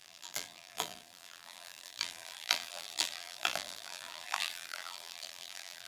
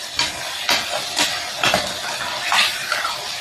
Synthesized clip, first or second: first